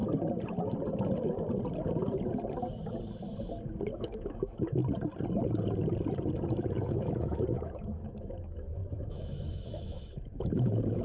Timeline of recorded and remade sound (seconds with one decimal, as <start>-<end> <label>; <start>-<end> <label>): 0.0-3.9 recorded; 3.9-4.8 remade; 4.8-6.5 recorded; 6.5-11.0 remade